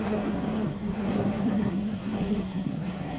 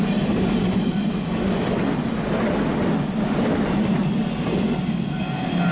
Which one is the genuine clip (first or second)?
second